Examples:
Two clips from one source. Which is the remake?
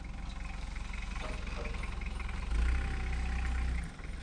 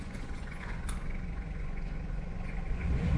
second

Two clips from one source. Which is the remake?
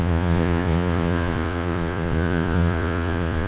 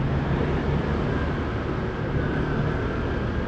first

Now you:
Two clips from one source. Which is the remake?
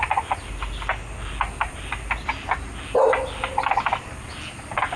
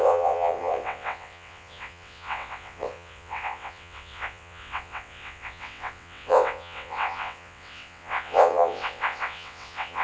second